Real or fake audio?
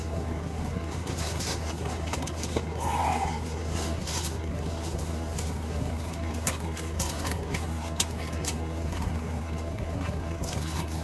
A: fake